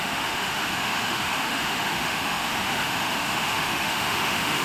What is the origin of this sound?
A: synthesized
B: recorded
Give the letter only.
A